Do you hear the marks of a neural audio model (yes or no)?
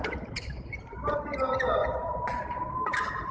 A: no